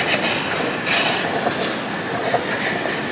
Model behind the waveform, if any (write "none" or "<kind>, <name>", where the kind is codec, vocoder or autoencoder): none